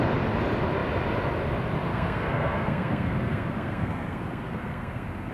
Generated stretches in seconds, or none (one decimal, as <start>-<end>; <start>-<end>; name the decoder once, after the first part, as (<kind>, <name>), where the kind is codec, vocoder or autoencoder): 1.9-5.3 (codec, SNAC)